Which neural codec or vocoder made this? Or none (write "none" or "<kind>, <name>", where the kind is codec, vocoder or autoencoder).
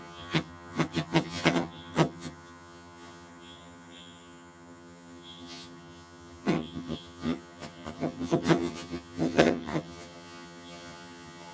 vocoder, HiFi-GAN